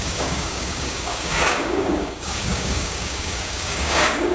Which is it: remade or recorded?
remade